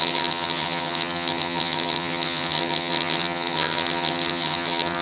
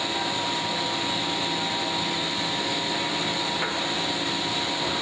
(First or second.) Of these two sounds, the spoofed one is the first